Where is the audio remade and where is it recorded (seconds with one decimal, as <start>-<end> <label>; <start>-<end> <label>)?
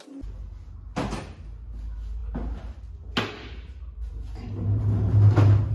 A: 0.0-5.7 recorded